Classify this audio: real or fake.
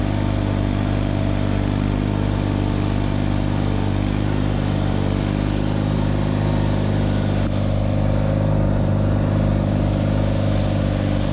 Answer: real